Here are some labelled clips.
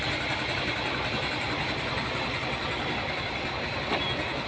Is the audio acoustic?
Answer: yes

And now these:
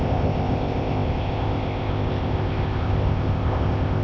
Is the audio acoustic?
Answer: no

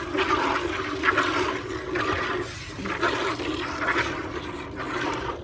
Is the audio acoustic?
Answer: yes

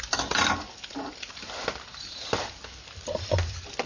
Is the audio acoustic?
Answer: yes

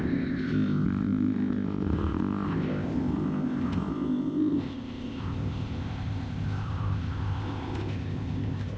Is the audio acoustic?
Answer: no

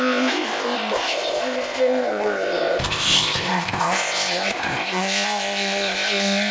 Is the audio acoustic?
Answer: no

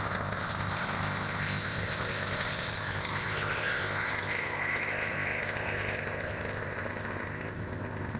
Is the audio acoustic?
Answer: no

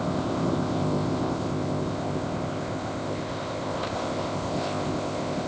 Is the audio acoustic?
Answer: no